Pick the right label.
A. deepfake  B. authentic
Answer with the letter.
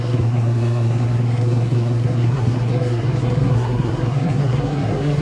A